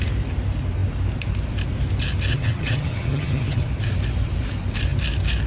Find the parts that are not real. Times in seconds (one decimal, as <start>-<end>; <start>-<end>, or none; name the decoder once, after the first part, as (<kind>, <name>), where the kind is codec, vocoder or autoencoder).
2.3-3.7 (vocoder, HiFi-GAN)